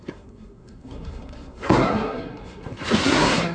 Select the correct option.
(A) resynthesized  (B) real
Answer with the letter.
A